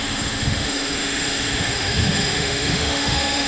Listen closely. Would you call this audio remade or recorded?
remade